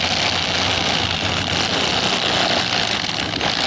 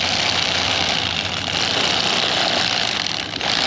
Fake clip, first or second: second